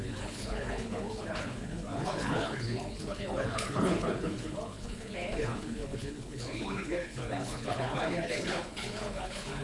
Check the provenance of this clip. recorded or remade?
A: remade